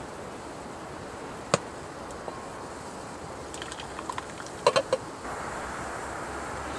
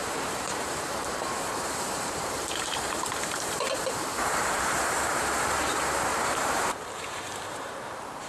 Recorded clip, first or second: first